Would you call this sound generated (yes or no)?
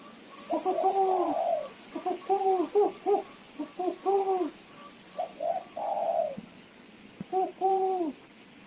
yes